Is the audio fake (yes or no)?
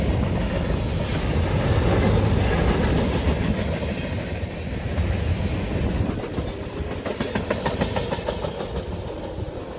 no